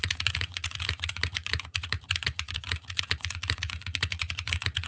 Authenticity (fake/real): fake